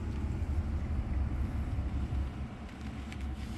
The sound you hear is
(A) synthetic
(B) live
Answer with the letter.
B